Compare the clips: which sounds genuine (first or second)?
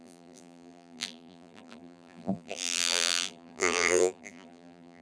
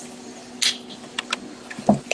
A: second